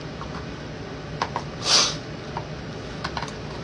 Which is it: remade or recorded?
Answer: recorded